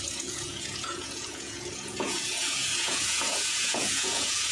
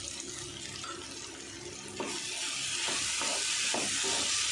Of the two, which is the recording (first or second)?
second